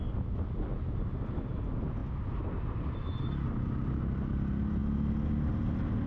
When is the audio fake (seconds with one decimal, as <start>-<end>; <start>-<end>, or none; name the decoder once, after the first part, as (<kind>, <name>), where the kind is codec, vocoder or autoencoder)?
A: none